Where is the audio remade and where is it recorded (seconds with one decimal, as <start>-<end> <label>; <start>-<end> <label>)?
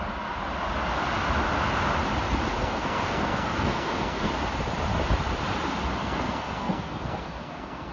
0.0-2.5 recorded; 2.5-4.3 remade; 4.3-6.0 recorded; 6.0-7.9 remade